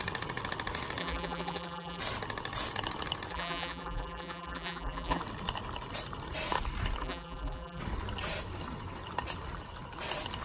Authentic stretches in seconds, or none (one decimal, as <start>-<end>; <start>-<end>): 0.0-1.0; 2.0-3.3; 5.2-7.0; 7.8-10.4